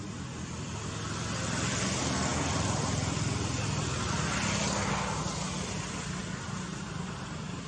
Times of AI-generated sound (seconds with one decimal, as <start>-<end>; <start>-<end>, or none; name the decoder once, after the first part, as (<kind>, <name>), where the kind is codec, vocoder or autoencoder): none